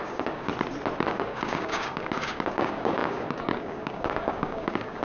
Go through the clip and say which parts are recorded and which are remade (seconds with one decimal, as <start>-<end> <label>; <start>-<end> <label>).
0.0-0.5 remade; 0.5-1.1 recorded; 1.1-5.0 remade